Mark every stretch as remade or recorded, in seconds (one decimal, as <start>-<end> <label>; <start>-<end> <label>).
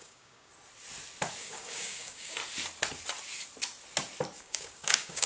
0.0-0.5 remade; 0.5-1.4 recorded; 1.4-2.4 remade; 2.4-4.4 recorded; 4.4-5.3 remade